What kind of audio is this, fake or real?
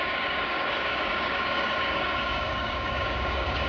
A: fake